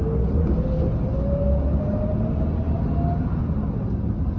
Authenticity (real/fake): real